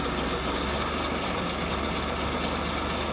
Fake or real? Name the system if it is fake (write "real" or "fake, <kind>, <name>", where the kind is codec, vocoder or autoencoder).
real